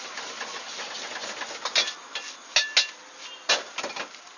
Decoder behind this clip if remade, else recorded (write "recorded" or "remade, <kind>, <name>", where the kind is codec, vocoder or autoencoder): recorded